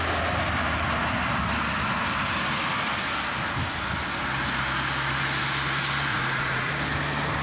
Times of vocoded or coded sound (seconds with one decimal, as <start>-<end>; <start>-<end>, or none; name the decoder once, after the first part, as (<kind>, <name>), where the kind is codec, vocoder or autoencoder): 6.1-6.7 (vocoder, Vocos)